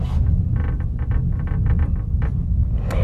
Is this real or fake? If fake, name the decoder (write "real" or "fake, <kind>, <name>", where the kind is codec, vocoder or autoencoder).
real